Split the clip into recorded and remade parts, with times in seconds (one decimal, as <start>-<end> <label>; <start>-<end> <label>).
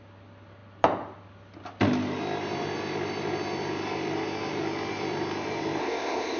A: 0.0-5.8 recorded; 5.8-6.4 remade